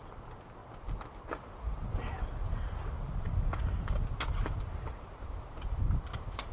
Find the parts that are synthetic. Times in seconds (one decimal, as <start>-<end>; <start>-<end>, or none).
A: none